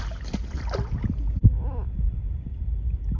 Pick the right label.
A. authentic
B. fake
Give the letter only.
A